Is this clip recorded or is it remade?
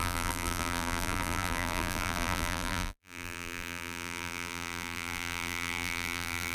remade